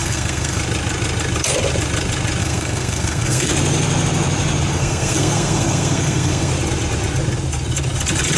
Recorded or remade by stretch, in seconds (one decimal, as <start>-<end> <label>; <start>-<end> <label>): 0.0-0.6 remade; 0.6-2.4 recorded; 2.4-3.5 remade; 3.5-4.7 recorded; 4.7-6.5 remade; 6.5-8.4 recorded